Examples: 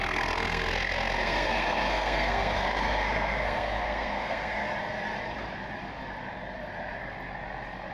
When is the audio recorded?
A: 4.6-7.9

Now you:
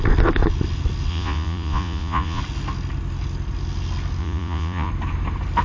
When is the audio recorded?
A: 0.0-1.1; 2.4-4.2; 4.9-5.6

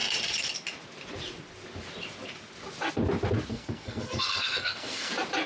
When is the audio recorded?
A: 0.0-3.5; 5.1-5.5

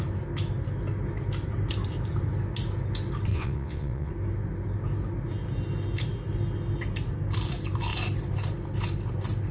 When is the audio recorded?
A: 0.0-3.3; 4.1-9.5

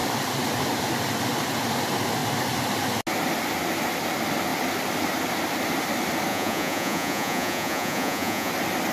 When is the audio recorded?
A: 0.0-6.3; 8.5-8.9